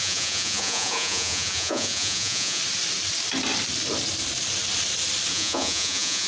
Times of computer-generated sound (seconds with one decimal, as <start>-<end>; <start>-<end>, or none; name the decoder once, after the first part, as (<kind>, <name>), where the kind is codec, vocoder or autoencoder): 0.0-2.6 (vocoder, Vocos); 5.3-6.3